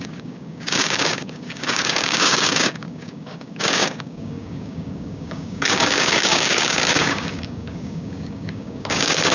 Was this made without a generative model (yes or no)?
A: no